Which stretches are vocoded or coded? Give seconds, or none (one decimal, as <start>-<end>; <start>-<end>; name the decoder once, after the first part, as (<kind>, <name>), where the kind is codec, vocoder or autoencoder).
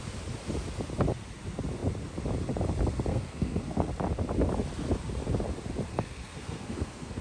3.1-3.9 (codec, SNAC); 5.9-7.2